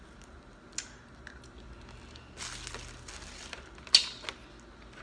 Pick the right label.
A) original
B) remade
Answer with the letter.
A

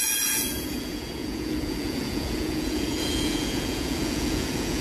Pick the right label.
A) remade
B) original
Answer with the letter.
A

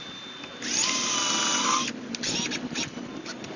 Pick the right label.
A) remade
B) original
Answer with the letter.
B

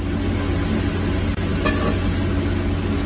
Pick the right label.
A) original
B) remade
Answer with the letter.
A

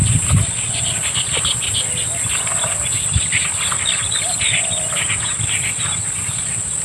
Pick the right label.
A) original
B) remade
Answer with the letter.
A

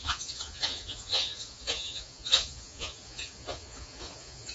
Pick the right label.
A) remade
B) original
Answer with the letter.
A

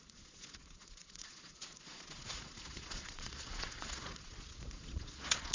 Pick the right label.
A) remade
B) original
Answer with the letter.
A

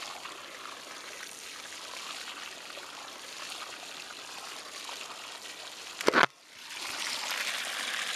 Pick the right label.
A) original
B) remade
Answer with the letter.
A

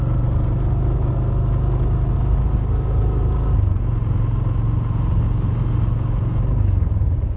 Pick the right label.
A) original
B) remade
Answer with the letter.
A